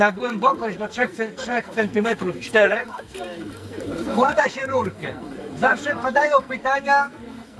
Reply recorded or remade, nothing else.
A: remade